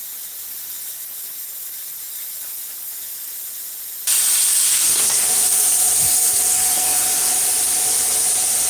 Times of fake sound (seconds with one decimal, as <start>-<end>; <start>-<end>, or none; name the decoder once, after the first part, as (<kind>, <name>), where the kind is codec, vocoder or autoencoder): 4.7-7.3 (codec, SNAC)